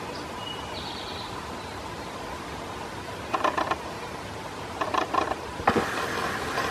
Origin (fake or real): real